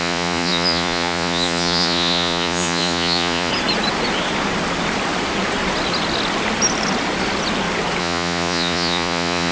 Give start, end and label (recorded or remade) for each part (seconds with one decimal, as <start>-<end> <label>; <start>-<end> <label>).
0.0-3.5 remade; 3.5-8.0 recorded; 8.0-9.5 remade